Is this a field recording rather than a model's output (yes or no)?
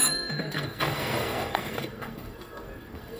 no